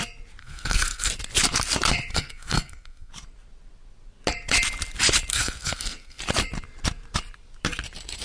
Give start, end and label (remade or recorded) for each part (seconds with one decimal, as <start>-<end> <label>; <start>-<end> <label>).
0.0-0.4 recorded; 0.4-1.1 remade; 1.1-2.1 recorded; 2.1-3.1 remade; 3.1-5.3 recorded; 5.3-6.2 remade; 6.2-8.2 recorded